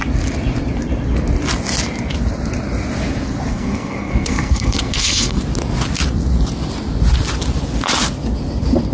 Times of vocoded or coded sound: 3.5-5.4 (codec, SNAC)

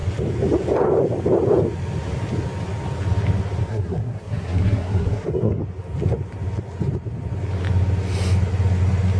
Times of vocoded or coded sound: 3.7-5.6 (codec, SNAC)

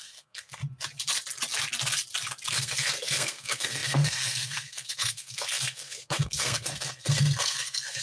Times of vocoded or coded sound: 0.0-0.6 (codec, SNAC); 2.5-8.0

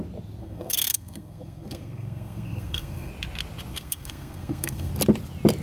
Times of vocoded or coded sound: 0.4-3.1 (codec, SNAC); 3.7-4.9

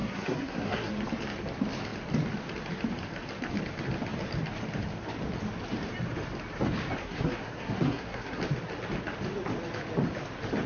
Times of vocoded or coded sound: 0.0-0.9 (codec, SNAC); 7.0-8.4